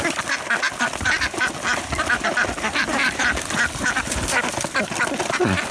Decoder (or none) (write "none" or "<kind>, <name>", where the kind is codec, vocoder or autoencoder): none